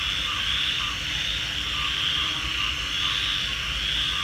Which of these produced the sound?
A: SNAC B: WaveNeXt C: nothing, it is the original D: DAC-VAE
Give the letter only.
C